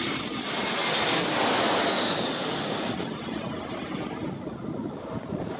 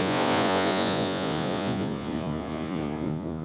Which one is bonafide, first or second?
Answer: first